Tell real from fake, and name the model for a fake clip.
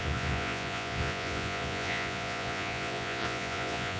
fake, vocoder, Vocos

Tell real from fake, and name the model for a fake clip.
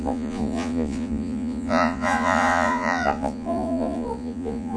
fake, vocoder, Vocos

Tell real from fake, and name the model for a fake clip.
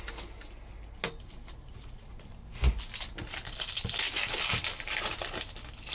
real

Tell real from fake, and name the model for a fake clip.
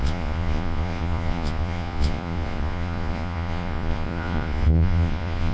fake, vocoder, Vocos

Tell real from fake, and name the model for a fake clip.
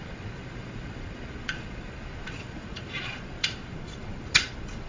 fake, vocoder, Vocos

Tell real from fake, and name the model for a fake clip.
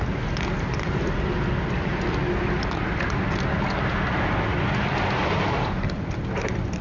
real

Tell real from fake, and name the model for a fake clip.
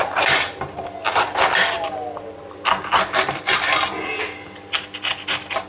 real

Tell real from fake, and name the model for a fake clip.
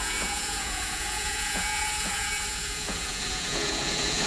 fake, vocoder, Vocos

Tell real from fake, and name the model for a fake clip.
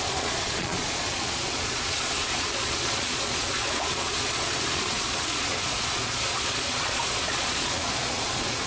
fake, vocoder, Vocos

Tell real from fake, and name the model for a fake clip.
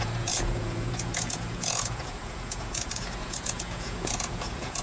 fake, vocoder, Vocos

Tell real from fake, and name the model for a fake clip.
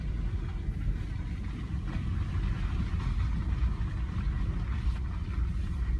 real